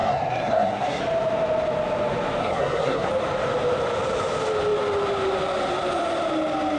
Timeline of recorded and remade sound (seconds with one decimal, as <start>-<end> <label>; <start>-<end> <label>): 0.0-1.0 remade; 1.0-2.4 recorded; 2.4-3.1 remade; 3.1-6.8 recorded